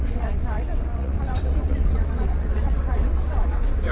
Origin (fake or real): fake